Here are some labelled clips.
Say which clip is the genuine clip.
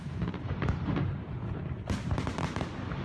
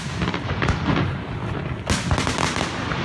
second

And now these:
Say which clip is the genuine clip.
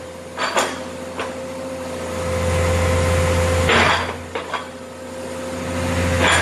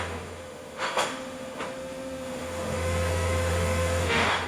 first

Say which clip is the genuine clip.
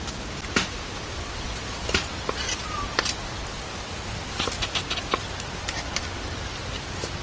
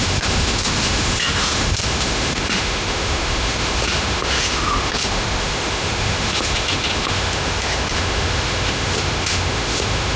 first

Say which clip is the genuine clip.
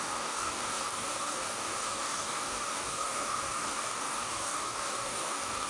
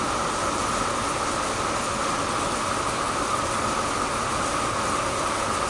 second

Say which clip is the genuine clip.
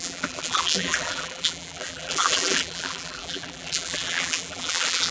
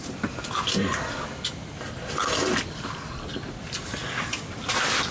second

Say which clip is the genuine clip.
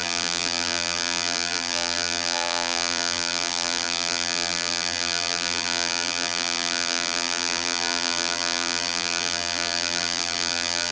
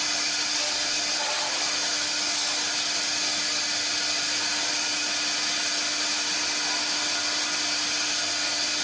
second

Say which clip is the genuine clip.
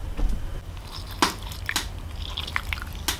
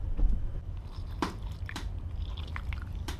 first